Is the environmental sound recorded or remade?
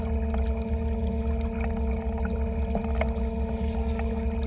recorded